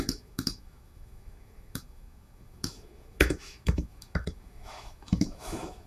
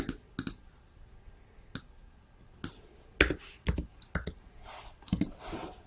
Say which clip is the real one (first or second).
second